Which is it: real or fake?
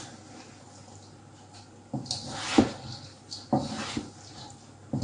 real